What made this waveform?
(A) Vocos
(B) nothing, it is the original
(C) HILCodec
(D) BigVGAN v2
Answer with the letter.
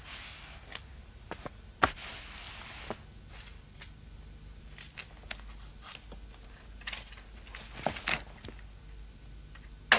B